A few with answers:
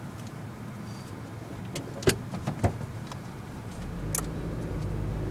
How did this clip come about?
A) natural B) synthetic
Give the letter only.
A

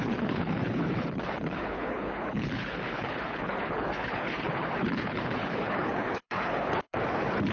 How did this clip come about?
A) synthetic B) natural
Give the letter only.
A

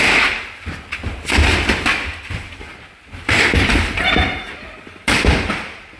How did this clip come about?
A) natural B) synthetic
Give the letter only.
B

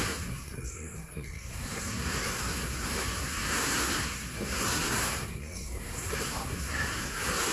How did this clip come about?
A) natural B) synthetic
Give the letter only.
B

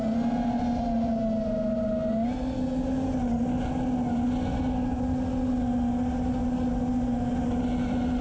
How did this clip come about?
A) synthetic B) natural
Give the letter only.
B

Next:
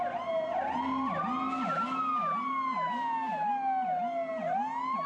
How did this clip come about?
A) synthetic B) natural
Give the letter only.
B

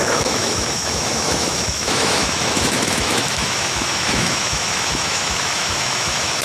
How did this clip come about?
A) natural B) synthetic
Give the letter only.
B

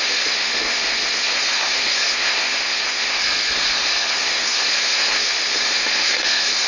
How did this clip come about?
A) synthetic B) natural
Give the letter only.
A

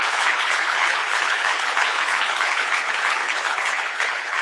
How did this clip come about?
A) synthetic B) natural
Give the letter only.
A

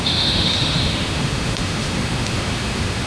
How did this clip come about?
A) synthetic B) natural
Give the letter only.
A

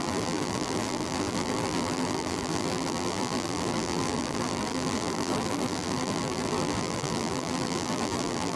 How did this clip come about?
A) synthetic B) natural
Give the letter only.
A